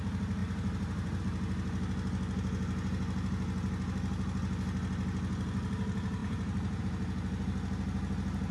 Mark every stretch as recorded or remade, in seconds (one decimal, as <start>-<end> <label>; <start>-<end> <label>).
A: 0.0-0.4 recorded; 0.4-1.2 remade; 1.2-6.2 recorded; 6.2-6.8 remade; 6.8-8.5 recorded